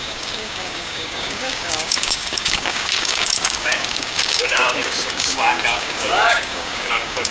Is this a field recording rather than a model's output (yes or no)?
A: no